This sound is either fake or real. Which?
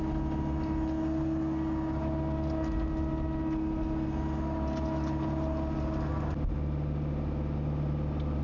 real